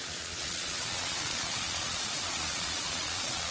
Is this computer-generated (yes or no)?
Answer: yes